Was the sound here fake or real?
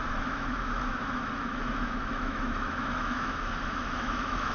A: fake